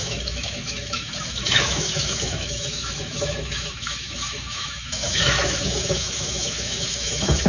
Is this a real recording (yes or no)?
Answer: no